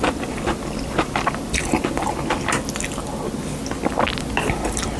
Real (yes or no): yes